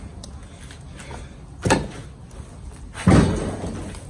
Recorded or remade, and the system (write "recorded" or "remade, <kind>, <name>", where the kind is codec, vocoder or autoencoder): recorded